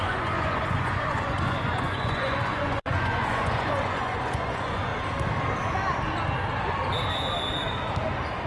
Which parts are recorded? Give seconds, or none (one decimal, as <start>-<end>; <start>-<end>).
4.9-8.5